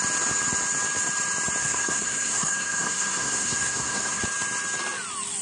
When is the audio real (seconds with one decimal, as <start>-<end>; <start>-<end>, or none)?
0.0-1.6; 4.2-5.4

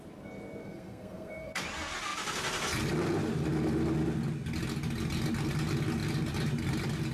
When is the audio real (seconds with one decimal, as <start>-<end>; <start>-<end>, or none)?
0.0-0.6; 1.5-7.1